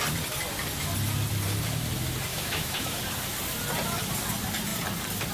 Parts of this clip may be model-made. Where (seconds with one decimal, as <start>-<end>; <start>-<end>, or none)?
2.3-3.0